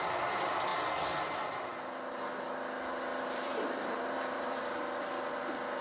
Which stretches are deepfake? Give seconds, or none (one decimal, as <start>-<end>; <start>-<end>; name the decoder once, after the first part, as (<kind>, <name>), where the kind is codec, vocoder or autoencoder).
3.1-5.3 (vocoder, BigVGAN v2)